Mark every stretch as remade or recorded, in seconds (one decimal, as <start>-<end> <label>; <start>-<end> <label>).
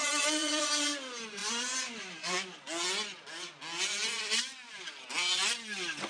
0.0-0.7 remade; 0.7-6.1 recorded